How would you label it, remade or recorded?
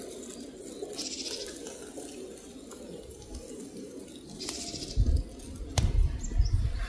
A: recorded